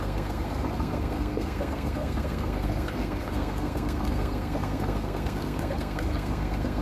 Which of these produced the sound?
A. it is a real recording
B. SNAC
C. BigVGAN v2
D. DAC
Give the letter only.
B